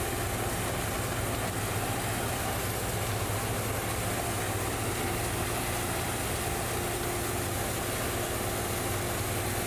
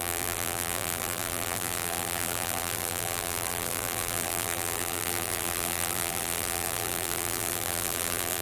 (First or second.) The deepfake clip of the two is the second